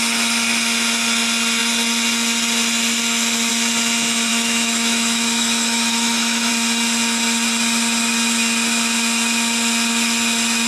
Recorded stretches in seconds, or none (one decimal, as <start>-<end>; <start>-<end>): 0.0-4.3; 6.5-10.7